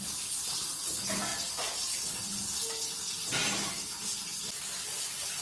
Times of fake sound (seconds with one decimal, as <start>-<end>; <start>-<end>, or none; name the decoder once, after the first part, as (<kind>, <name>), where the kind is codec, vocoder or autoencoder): 1.3-2.0 (vocoder, BigVGAN v2)